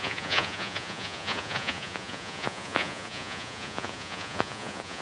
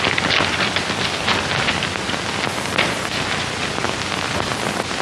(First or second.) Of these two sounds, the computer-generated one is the first